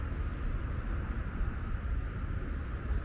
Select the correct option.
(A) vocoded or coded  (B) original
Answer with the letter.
B